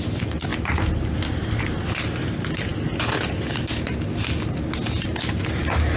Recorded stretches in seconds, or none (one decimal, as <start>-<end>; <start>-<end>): 0.0-6.0